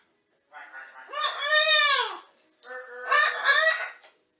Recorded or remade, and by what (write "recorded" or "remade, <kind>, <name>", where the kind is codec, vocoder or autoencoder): recorded